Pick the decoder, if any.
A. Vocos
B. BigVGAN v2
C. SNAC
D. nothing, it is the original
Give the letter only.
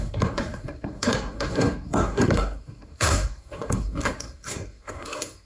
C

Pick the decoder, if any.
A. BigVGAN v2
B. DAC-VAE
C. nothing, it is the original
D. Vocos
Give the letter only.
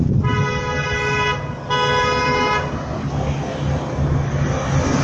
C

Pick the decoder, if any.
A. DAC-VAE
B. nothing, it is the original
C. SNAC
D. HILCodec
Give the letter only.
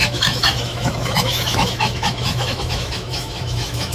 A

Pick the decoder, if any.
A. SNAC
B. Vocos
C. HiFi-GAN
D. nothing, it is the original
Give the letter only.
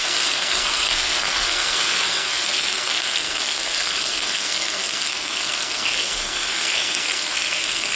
A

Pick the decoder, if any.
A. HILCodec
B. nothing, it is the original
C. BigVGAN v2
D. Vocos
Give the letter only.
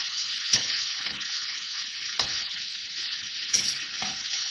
A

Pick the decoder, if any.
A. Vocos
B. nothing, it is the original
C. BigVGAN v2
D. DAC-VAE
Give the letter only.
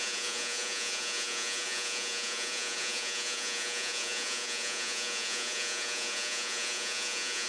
A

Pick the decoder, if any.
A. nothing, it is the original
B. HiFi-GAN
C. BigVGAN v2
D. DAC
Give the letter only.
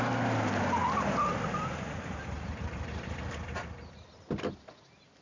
A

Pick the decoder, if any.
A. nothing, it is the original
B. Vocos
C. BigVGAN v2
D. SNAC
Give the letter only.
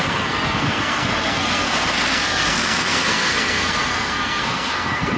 D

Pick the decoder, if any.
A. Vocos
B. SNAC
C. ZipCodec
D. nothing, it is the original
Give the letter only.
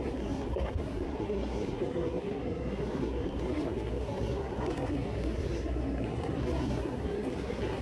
B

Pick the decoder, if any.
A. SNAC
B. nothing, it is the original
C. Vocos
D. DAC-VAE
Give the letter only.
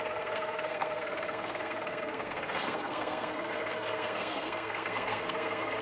A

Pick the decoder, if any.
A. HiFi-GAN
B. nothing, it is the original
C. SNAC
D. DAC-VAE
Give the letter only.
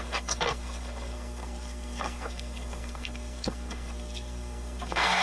C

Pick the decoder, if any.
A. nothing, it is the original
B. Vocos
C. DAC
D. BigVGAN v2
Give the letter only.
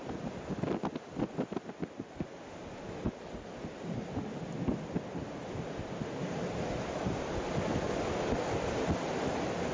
A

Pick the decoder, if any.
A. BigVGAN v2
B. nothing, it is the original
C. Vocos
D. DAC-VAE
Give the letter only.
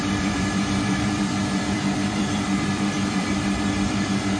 A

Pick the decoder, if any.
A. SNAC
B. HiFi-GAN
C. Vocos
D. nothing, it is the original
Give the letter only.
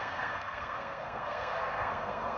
A